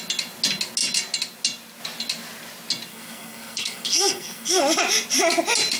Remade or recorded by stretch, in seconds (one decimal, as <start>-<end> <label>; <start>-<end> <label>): 0.0-2.9 recorded; 2.9-4.6 remade; 4.6-5.8 recorded